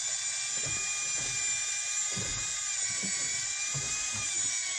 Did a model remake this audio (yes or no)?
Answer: no